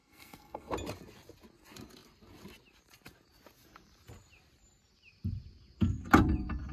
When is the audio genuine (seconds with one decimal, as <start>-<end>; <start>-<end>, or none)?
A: 0.7-6.7